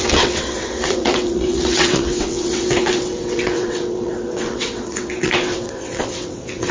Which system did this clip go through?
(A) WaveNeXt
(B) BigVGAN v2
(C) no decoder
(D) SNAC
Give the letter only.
A